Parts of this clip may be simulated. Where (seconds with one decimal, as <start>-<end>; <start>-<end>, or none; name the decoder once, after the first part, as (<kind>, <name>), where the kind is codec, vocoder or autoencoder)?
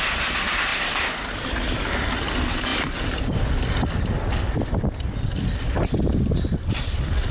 0.7-1.4 (vocoder, BigVGAN v2); 2.7-6.8